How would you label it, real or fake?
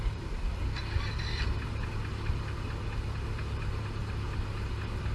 real